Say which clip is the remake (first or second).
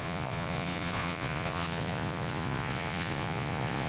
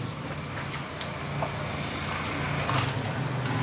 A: first